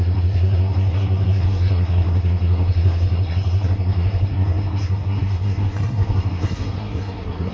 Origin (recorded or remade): remade